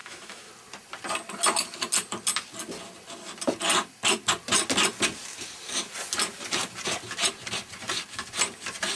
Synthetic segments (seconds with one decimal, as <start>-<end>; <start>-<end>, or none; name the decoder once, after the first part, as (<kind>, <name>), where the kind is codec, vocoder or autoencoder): 0.0-0.5 (autoencoder, DAC-VAE)